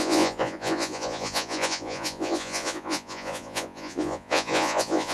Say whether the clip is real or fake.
fake